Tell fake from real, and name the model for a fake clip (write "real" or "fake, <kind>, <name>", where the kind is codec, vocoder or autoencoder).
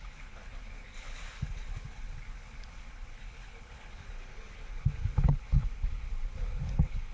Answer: fake, codec, HILCodec